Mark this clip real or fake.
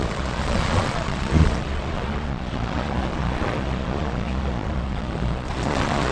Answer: fake